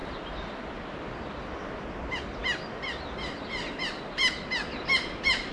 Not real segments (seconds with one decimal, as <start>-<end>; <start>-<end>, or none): none